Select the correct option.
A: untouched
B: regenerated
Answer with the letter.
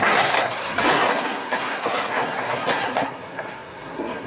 B